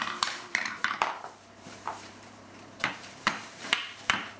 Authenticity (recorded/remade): remade